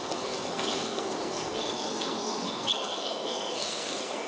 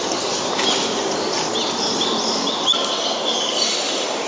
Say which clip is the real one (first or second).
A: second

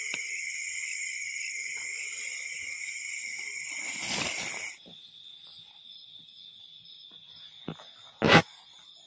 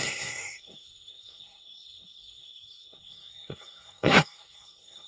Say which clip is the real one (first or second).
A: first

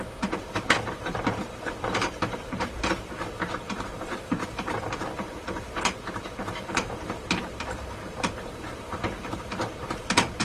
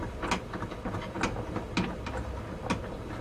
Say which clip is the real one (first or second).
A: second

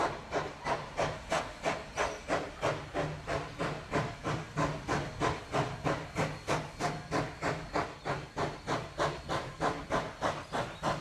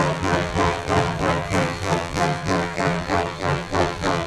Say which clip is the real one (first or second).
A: first